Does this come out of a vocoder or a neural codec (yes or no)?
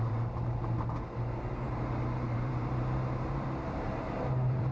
yes